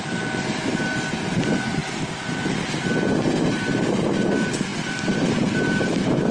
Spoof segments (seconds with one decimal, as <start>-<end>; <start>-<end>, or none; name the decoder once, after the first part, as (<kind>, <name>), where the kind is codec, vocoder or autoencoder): none